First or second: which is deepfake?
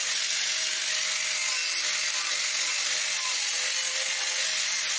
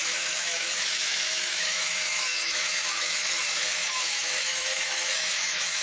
second